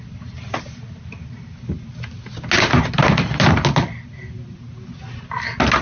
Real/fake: real